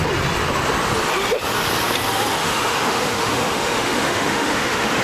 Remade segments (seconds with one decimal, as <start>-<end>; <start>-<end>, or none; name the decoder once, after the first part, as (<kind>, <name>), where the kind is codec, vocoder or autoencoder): 2.4-5.0 (autoencoder, DAC-VAE)